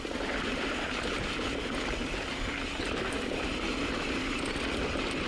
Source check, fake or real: real